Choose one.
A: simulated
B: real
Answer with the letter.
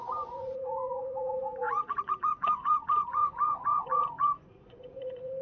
A